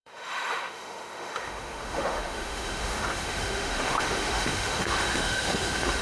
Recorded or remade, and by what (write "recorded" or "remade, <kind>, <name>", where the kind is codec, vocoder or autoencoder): remade, autoencoder, DAC-VAE